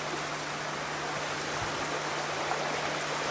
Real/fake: real